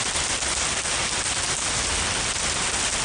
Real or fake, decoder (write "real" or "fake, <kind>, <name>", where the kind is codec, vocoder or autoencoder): real